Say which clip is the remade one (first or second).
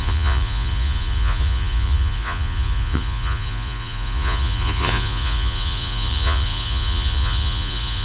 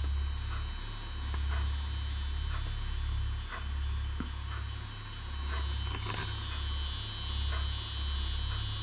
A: first